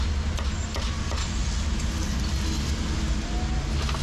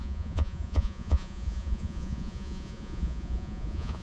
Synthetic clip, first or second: second